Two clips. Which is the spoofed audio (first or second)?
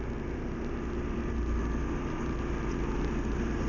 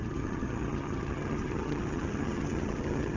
second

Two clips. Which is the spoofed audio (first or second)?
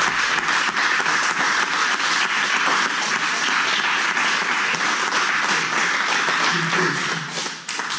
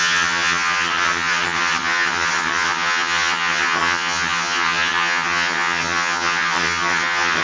second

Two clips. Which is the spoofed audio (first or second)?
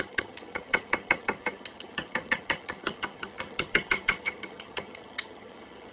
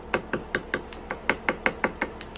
first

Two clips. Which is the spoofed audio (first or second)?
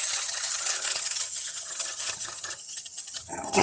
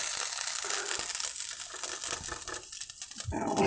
first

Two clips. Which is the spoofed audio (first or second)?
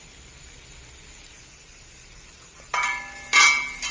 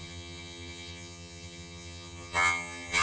second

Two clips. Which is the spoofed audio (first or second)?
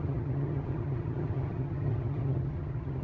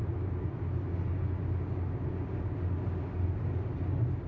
first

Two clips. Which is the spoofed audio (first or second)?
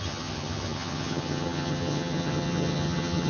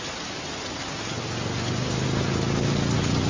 first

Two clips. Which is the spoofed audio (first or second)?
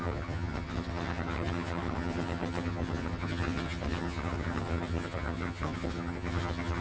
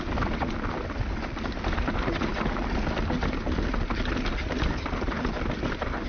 first